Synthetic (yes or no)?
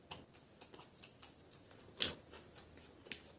no